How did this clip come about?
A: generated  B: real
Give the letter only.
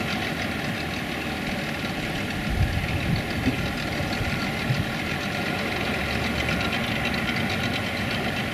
B